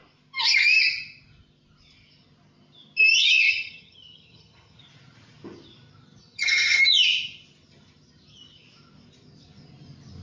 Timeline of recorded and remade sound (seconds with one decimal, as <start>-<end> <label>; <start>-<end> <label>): 0.0-3.2 recorded; 3.2-4.8 remade; 4.8-6.2 recorded; 6.2-6.8 remade; 6.8-10.2 recorded